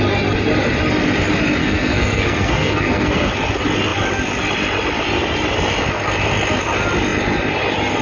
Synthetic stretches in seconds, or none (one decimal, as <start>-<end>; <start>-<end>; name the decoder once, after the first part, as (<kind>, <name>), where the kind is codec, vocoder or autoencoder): 1.6-3.3 (codec, SNAC)